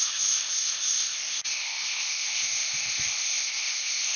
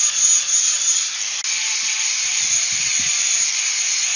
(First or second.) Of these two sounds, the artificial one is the first